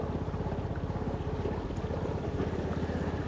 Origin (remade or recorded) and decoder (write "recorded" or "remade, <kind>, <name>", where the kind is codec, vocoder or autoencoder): recorded